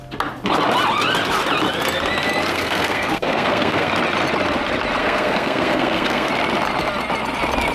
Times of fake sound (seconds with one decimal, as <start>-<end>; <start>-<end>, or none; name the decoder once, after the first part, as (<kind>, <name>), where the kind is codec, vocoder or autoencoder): 2.5-3.9 (codec, SNAC); 5.0-6.3